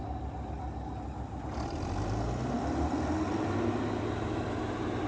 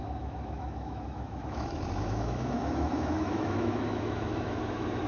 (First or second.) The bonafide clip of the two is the first